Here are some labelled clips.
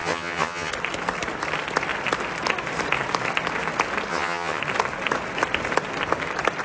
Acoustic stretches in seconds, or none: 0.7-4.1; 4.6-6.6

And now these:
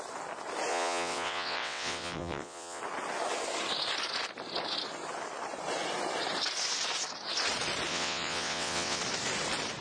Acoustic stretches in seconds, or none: 0.0-0.7; 2.8-7.9; 9.0-9.8

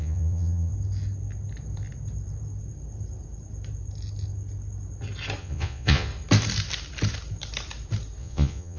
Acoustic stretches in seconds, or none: 0.7-5.4; 6.1-8.2

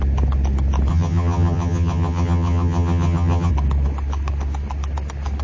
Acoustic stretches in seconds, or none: 0.0-0.9; 3.5-5.4

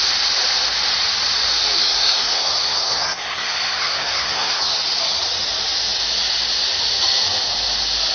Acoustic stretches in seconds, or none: 0.0-1.8; 4.6-8.1

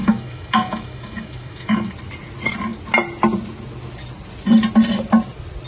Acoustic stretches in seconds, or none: 1.9-5.7